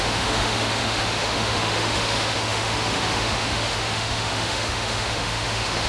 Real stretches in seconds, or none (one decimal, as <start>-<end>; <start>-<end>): none

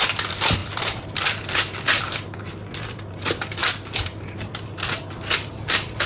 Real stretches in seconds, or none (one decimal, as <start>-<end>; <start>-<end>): 0.0-6.1

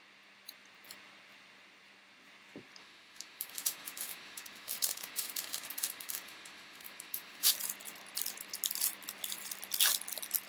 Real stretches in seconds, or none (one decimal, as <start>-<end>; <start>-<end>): 0.0-2.8; 7.5-10.5

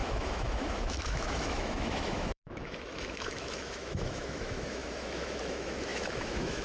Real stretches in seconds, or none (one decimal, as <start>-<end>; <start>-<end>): none

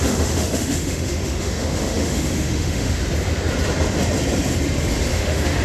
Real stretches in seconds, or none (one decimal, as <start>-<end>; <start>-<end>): 3.0-5.1

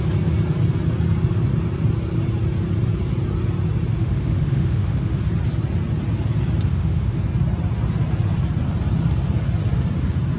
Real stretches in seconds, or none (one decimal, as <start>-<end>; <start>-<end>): 0.0-4.0; 5.2-6.7; 7.2-10.4